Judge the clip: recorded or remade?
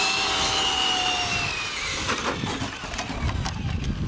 recorded